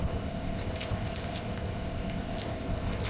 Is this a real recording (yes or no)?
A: no